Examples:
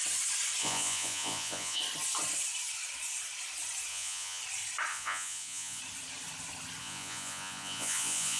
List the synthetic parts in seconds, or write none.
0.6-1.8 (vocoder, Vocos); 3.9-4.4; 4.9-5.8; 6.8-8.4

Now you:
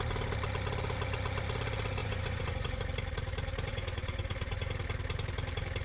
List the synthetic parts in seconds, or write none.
2.0-2.8 (vocoder, Vocos); 3.7-4.7

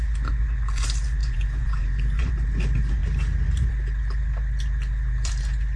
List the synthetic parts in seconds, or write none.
1.2-2.3 (vocoder, Vocos)

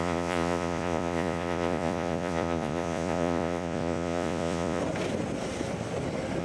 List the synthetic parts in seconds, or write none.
0.0-4.8 (vocoder, Vocos)